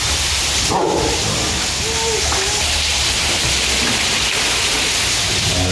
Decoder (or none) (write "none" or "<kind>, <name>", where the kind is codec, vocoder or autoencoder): none